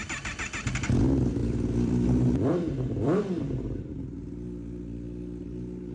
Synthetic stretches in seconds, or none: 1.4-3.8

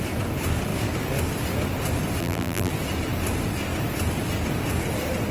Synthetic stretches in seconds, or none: 2.2-2.7